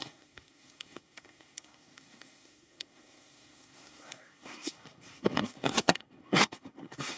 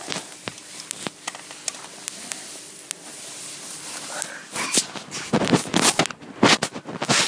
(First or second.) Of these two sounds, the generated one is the first